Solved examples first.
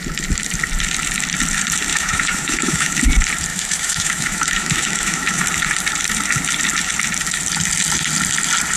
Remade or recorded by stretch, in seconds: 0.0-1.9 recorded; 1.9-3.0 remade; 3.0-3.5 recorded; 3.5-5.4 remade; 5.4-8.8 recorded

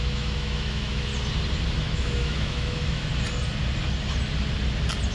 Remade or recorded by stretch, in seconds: 0.0-1.1 remade; 1.1-1.8 recorded; 1.8-3.1 remade; 3.1-5.1 recorded

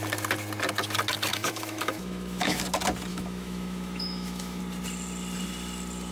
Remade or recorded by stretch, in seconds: 0.0-1.3 recorded; 1.3-2.6 remade; 2.6-3.1 recorded; 3.1-4.6 remade; 4.6-6.1 recorded